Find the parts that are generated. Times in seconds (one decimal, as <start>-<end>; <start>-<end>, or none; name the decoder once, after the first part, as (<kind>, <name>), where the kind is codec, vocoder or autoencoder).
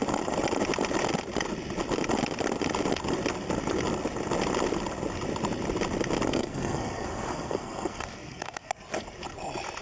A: 6.3-8.7 (codec, SNAC)